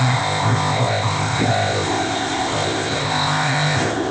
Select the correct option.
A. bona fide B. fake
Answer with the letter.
B